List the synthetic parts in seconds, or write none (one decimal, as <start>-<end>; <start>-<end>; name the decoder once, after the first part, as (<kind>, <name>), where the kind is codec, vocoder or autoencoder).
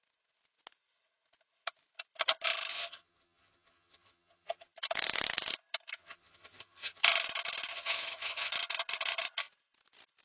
2.7-4.7 (vocoder, HiFi-GAN); 6.0-7.0; 7.7-8.5